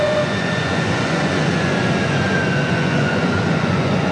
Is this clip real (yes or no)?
no